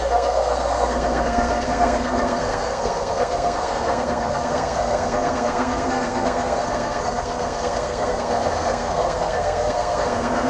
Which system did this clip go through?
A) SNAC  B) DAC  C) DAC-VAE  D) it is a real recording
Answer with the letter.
A